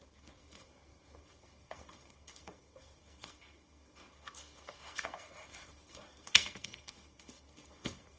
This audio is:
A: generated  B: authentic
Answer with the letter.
A